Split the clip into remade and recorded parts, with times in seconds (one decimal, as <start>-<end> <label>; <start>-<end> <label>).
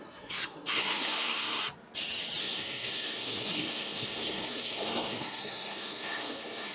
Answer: 0.0-1.6 remade; 1.6-2.4 recorded; 2.4-6.7 remade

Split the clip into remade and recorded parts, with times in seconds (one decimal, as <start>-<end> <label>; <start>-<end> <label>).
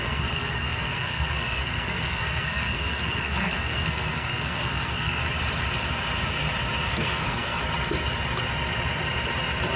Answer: 0.0-5.2 remade; 5.2-6.9 recorded; 6.9-7.6 remade; 7.6-9.8 recorded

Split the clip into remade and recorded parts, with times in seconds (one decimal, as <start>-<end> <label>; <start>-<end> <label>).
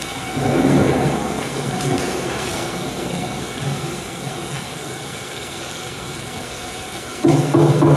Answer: 0.0-8.0 remade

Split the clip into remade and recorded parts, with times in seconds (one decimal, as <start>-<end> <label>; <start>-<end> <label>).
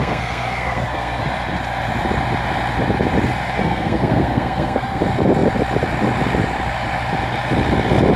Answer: 0.0-1.2 remade; 1.2-3.6 recorded; 3.6-5.0 remade; 5.0-8.2 recorded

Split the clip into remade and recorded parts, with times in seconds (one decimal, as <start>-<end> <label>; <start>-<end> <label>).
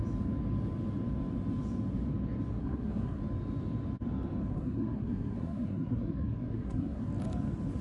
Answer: 0.0-2.5 recorded; 2.5-3.2 remade; 3.2-4.5 recorded; 4.5-7.1 remade; 7.1-7.8 recorded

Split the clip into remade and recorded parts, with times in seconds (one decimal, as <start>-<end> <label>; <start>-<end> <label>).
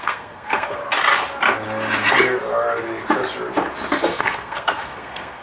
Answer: 0.0-0.8 remade; 0.8-4.0 recorded; 4.0-5.4 remade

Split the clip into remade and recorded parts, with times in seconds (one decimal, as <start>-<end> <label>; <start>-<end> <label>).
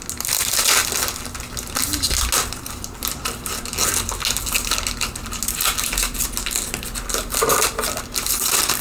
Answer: 0.0-8.8 recorded